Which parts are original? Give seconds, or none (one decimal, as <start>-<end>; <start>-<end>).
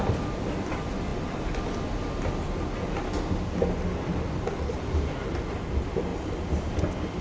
0.0-7.2